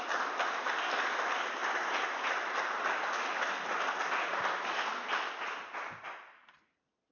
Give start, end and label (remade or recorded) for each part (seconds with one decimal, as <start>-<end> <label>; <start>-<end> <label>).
0.0-7.1 recorded